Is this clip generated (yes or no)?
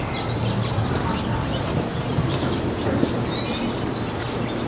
no